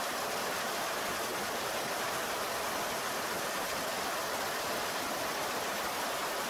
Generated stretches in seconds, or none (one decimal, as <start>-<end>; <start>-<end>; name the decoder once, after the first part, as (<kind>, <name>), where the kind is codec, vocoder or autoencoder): none